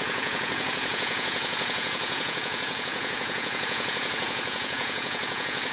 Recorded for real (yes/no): no